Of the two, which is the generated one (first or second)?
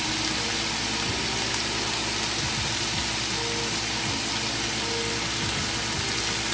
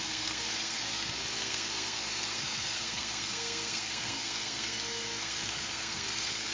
second